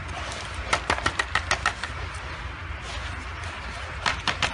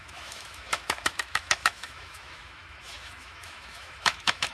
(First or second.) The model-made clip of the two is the second